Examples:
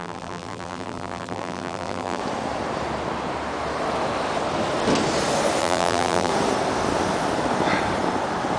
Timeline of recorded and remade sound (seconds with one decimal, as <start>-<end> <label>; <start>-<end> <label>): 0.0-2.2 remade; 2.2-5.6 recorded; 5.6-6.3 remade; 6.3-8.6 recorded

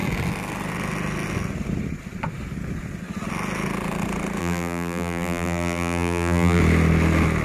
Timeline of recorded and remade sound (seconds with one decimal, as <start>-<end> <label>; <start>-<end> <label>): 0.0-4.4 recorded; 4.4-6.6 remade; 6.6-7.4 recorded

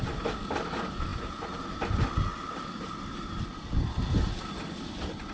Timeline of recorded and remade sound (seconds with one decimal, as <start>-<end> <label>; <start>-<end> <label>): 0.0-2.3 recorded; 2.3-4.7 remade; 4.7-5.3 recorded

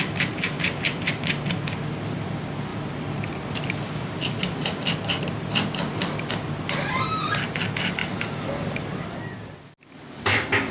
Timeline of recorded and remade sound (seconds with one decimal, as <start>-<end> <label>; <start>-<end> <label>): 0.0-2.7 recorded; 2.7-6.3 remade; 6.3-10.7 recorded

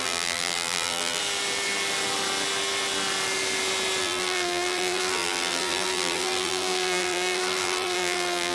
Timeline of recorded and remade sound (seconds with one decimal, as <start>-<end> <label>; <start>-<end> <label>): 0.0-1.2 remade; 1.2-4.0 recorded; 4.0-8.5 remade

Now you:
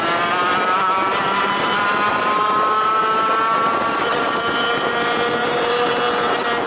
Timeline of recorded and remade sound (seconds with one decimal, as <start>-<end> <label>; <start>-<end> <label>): 0.0-1.1 recorded; 1.1-4.9 remade; 4.9-5.4 recorded; 5.4-6.0 remade; 6.0-6.7 recorded

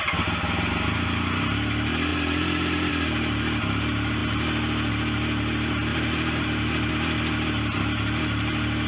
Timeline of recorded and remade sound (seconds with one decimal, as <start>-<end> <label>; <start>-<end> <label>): 0.0-2.1 recorded; 2.1-2.9 remade; 2.9-5.9 recorded; 5.9-6.9 remade; 6.9-8.9 recorded